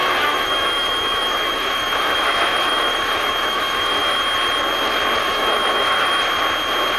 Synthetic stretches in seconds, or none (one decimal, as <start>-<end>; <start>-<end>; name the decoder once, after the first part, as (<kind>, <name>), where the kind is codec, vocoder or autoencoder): 0.0-4.2 (autoencoder, DAC-VAE); 5.2-6.2